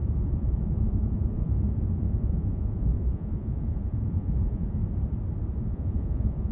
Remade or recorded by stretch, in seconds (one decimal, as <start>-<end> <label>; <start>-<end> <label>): 0.0-4.8 remade; 4.8-5.6 recorded; 5.6-6.5 remade